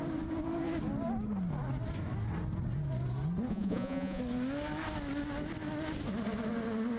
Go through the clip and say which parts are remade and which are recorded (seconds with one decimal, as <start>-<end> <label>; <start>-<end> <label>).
0.0-3.5 recorded; 3.5-4.2 remade; 4.2-7.0 recorded